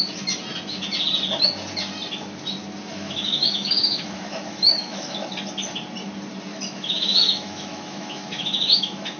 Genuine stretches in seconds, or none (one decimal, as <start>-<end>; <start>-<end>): 0.0-2.9; 5.3-6.5